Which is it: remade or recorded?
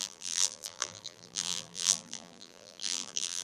remade